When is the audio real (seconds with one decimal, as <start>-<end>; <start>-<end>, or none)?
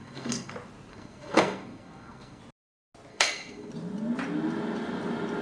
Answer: 0.5-0.9; 2.4-3.1; 3.7-5.4